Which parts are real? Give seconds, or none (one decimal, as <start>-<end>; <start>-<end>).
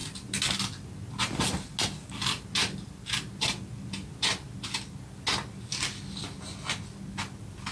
0.0-7.7